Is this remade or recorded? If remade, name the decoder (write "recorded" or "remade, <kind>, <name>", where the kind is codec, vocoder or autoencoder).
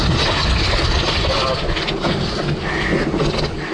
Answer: recorded